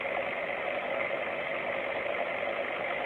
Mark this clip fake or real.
real